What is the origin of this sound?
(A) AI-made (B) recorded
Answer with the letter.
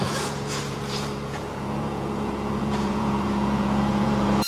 A